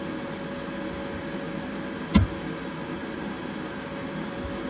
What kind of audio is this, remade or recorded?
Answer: recorded